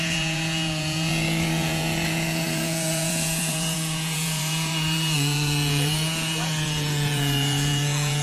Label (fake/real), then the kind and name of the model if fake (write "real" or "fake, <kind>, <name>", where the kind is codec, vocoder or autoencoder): fake, vocoder, Vocos